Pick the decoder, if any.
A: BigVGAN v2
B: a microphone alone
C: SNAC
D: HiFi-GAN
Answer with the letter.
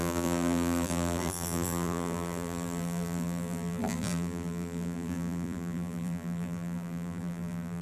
A